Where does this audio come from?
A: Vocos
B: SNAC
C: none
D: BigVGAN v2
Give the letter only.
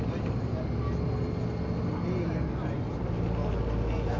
C